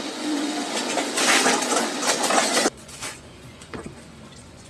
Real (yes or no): no